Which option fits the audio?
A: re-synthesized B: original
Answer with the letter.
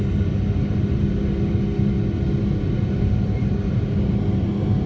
B